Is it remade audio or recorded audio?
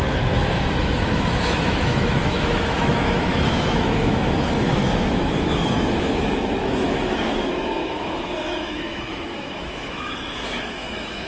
remade